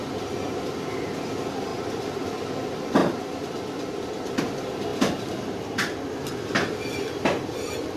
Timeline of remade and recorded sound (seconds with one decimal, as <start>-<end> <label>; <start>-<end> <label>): 0.0-8.0 recorded